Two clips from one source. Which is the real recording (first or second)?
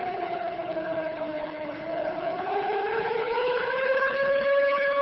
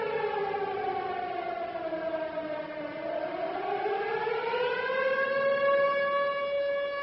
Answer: second